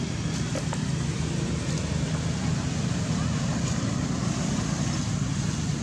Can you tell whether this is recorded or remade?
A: recorded